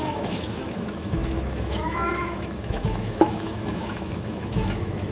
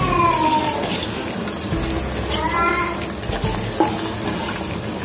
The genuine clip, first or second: second